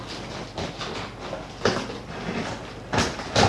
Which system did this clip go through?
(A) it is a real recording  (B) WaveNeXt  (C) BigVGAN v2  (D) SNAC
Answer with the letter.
A